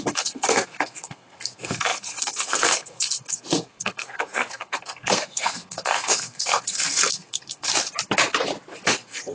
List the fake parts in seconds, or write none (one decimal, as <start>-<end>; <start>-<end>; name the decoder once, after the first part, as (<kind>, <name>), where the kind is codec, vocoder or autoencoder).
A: 0.0-7.7 (codec, SNAC); 8.9-9.3

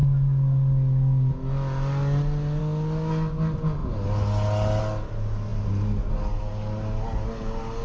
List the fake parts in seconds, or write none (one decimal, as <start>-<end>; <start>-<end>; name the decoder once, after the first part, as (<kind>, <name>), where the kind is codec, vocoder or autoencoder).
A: none

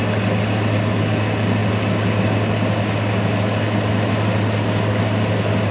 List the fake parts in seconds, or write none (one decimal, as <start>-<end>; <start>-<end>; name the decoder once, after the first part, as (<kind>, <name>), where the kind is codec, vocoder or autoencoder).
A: 0.0-5.7 (vocoder, BigVGAN v2)

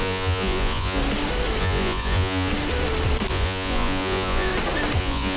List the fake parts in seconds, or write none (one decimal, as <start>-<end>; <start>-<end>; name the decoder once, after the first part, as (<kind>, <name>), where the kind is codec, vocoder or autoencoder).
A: 0.0-1.0 (vocoder, Vocos); 1.6-2.5; 3.3-4.5; 5.0-5.4

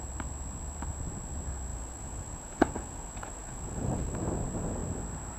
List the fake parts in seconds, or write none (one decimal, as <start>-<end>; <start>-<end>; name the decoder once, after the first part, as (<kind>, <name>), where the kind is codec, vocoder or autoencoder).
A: 1.7-4.1 (vocoder, Vocos)

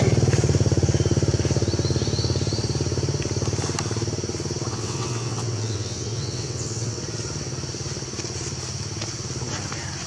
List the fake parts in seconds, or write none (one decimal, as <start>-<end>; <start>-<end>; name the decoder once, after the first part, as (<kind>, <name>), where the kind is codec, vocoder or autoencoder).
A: 4.7-7.0 (vocoder, WaveNeXt)

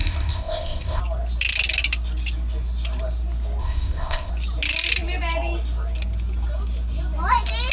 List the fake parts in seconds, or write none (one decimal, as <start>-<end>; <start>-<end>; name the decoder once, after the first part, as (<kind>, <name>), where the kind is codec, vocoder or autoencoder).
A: 0.0-1.0 (codec, ZipCodec); 3.6-4.3

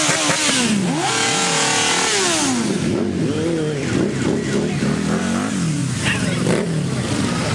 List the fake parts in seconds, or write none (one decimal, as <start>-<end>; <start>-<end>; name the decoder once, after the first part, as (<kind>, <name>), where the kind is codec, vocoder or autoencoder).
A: 5.8-7.0 (vocoder, BigVGAN v2)